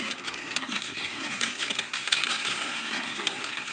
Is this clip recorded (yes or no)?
no